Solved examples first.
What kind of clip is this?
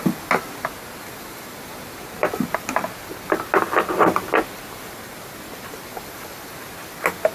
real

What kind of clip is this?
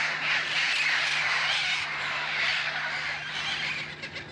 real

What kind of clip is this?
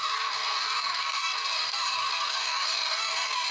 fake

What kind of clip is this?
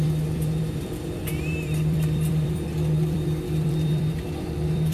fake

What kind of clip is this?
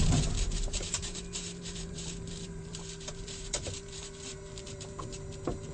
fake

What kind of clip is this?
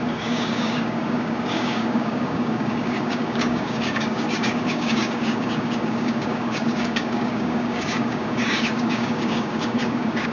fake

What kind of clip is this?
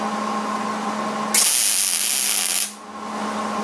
real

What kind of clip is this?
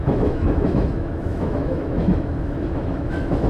fake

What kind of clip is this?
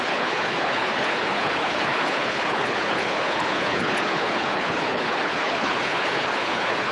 fake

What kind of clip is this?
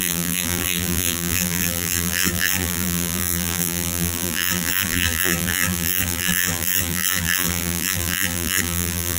fake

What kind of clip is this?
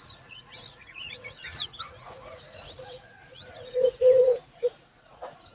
fake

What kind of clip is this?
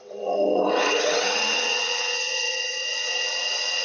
fake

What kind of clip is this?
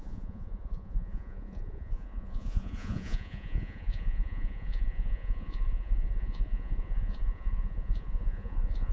fake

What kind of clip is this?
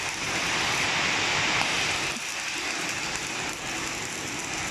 real